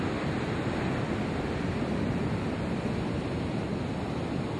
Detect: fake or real real